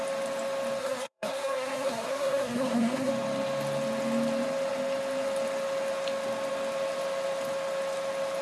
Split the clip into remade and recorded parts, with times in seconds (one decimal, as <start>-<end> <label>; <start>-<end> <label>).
0.0-0.8 recorded; 0.8-3.1 remade; 3.1-8.4 recorded